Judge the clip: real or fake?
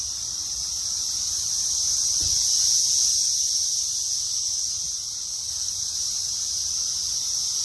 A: fake